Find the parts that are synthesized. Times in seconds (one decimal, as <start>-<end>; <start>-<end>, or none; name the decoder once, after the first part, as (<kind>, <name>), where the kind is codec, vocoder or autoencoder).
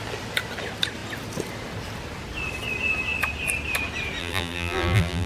4.2-5.3 (vocoder, BigVGAN v2)